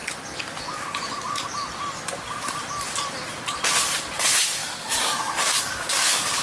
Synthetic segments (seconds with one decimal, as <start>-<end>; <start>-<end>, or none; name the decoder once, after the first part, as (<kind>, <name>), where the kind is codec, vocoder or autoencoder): 4.6-6.4 (codec, DAC)